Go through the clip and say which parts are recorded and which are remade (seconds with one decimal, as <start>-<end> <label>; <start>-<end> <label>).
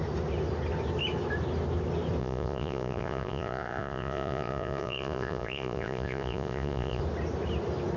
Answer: 0.0-2.2 recorded; 2.2-7.0 remade; 7.0-8.0 recorded